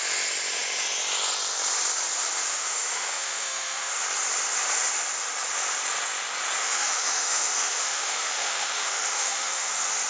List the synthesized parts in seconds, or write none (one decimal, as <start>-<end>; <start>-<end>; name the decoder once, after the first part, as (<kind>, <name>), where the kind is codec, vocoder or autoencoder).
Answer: 2.5-3.9 (autoencoder, DAC-VAE); 6.6-9.7